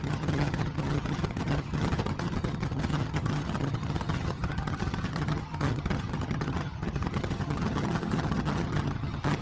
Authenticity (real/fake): fake